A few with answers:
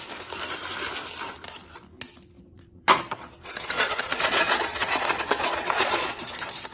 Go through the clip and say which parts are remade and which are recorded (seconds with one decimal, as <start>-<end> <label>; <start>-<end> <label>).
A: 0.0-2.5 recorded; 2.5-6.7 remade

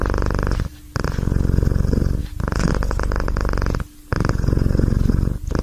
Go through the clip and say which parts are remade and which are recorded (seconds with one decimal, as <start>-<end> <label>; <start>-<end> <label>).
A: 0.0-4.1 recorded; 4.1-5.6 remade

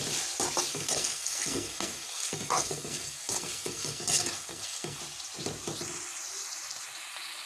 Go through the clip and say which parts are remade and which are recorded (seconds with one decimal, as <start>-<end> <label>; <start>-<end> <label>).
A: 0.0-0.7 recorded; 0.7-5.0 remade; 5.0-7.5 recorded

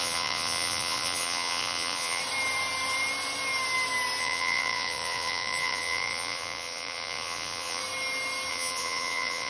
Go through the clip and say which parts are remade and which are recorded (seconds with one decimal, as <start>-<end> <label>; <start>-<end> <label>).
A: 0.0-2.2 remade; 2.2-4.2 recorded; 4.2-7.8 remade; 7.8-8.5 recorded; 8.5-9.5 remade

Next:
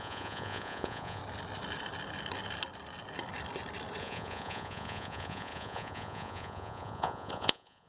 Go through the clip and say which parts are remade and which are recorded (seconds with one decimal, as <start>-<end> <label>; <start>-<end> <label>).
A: 0.0-1.2 remade; 1.2-4.0 recorded; 4.0-7.9 remade